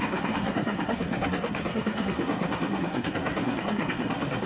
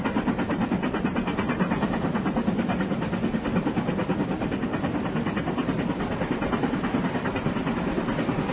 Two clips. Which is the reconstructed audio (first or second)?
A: first